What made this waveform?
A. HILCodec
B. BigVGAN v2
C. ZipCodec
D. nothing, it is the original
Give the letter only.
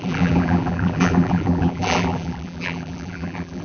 B